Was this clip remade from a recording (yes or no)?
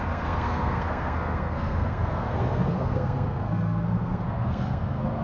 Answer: yes